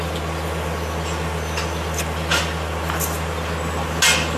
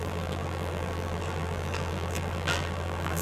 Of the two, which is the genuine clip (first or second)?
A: first